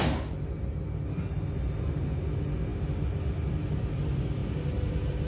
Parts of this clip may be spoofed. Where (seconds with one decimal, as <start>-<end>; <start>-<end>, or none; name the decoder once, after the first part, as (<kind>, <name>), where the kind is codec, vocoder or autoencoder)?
none